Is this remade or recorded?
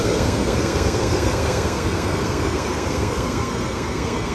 remade